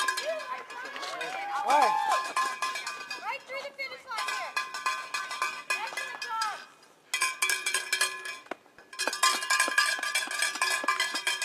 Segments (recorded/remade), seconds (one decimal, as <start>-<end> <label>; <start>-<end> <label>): 0.0-11.4 recorded